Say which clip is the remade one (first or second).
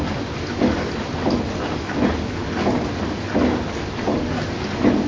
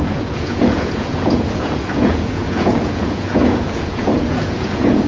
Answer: second